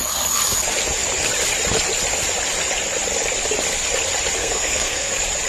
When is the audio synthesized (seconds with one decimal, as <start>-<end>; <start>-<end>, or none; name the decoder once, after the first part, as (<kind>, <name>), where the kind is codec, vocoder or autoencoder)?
4.4-5.1 (codec, SNAC)